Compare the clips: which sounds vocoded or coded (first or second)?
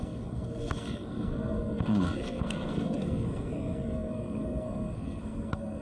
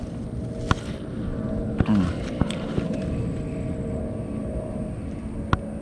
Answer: first